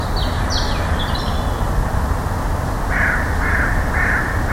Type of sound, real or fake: real